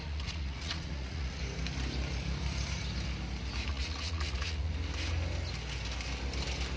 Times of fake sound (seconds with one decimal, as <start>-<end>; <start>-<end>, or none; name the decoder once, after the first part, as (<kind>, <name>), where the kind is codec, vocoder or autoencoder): 0.0-1.4 (vocoder, Vocos); 3.7-4.7